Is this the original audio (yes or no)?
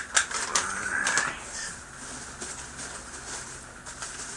yes